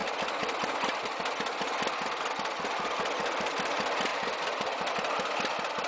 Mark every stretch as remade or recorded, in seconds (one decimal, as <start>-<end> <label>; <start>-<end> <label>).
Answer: 0.0-5.9 recorded